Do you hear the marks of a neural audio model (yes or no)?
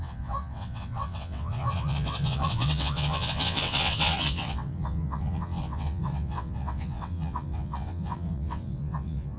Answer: yes